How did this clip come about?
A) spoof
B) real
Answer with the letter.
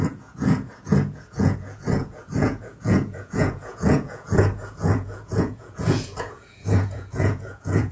A